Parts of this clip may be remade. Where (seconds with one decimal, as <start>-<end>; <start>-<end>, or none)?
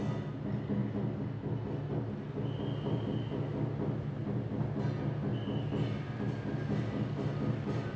none